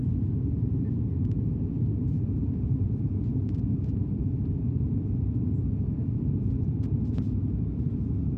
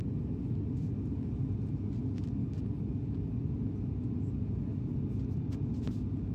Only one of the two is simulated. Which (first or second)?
first